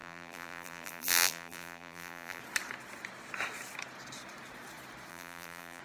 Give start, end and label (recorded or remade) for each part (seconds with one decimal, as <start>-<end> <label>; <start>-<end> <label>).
0.0-2.4 remade; 2.4-5.1 recorded; 5.1-5.8 remade